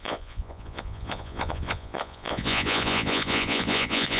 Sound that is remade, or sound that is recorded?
remade